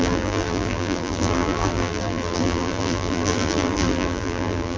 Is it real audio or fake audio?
fake